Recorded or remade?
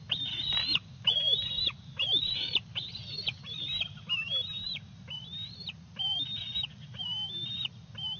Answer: recorded